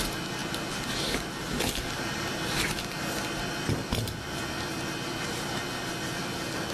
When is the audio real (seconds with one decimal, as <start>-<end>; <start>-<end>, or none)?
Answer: 0.0-6.7